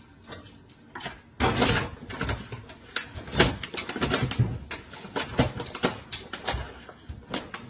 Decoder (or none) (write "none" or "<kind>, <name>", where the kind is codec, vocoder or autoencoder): none